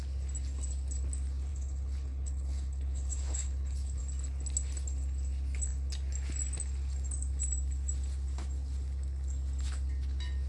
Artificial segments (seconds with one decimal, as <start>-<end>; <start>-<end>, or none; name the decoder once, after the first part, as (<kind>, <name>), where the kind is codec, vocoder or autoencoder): 1.5-4.0 (codec, HILCodec)